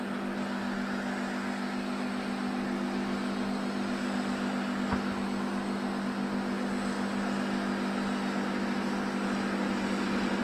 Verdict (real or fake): real